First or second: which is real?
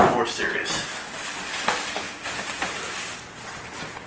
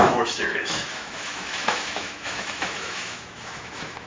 first